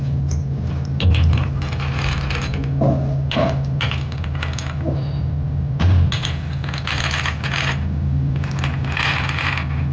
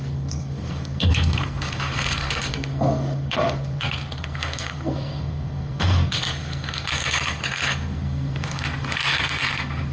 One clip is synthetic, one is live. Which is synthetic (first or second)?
second